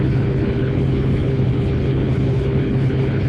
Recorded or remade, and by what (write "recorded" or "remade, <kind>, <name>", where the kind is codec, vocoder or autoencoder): remade, codec, HILCodec